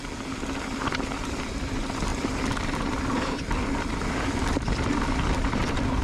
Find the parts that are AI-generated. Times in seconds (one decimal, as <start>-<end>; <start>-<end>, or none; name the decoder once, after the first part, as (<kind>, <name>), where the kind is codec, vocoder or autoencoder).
2.1-4.9 (vocoder, BigVGAN v2)